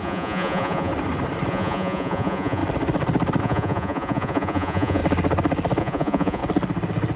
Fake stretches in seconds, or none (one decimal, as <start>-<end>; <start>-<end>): 0.0-0.9; 1.5-2.6; 3.4-5.0; 5.8-6.4